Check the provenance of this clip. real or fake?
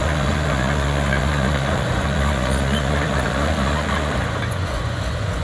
fake